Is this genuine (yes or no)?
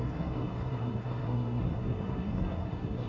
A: no